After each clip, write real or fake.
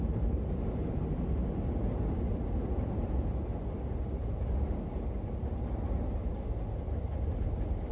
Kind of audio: real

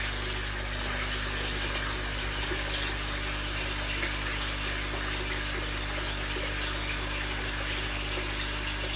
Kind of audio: real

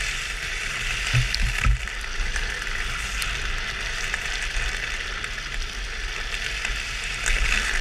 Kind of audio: real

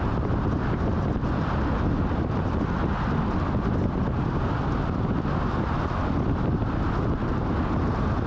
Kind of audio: real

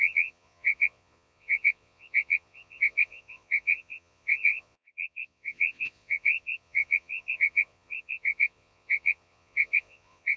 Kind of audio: fake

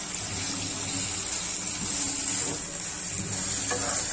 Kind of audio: real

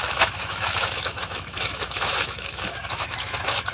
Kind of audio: fake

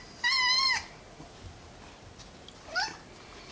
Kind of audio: real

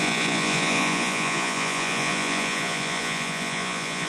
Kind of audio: fake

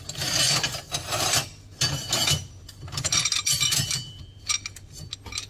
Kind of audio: real